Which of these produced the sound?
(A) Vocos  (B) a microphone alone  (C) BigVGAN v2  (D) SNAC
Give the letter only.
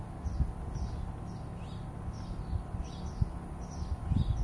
B